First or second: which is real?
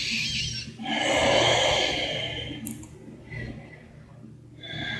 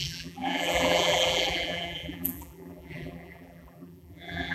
first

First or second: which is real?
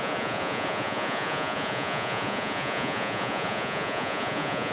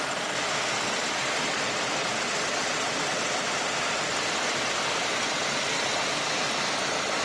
second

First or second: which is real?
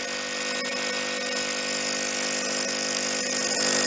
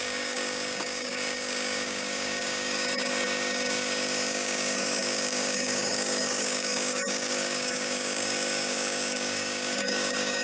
first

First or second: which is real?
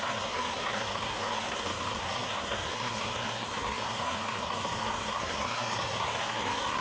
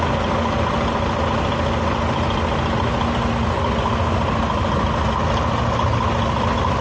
second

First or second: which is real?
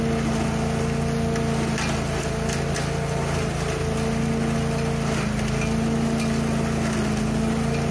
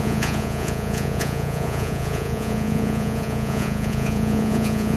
first